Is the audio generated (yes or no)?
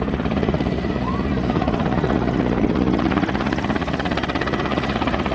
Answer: yes